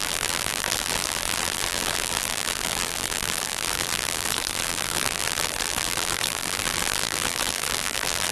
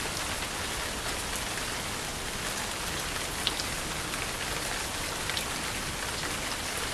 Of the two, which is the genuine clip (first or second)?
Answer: second